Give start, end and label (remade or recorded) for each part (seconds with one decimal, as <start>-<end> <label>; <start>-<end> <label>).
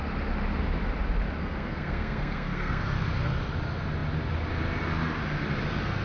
0.0-1.4 recorded; 1.4-2.8 remade; 2.8-6.0 recorded